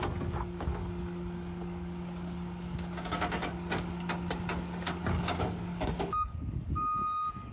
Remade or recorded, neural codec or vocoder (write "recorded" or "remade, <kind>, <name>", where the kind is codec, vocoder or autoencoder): remade, codec, DAC